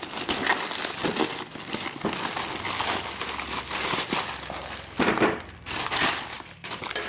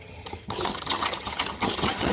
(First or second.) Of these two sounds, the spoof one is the second